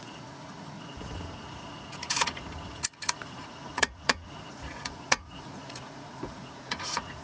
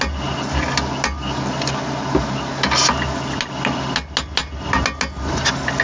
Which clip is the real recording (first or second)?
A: second